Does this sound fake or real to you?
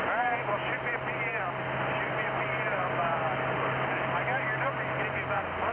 real